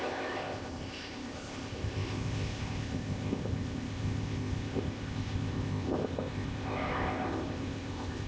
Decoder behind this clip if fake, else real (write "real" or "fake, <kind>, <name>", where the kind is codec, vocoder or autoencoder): fake, codec, ZipCodec